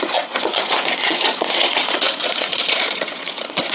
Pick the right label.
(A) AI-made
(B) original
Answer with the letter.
A